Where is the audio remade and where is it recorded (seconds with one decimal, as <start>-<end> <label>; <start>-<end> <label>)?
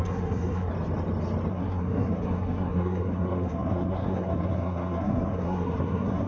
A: 0.0-0.7 remade; 0.7-1.5 recorded; 1.5-6.3 remade